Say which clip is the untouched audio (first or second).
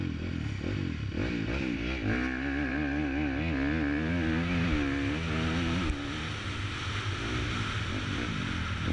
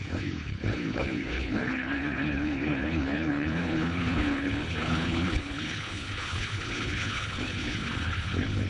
first